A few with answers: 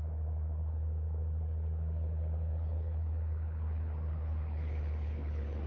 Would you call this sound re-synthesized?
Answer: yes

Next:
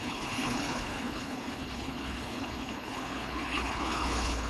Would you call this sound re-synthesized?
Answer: yes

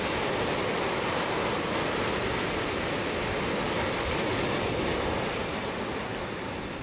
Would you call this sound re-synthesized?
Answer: no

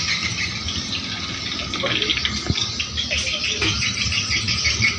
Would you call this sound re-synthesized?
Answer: no